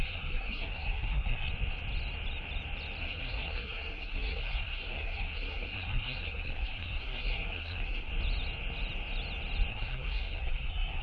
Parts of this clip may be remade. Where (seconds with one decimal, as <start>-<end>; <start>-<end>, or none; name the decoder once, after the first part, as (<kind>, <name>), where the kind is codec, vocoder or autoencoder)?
0.0-1.5 (codec, SNAC); 3.0-8.1; 9.7-11.0